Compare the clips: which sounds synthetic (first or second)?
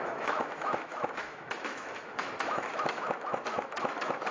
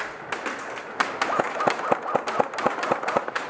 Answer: first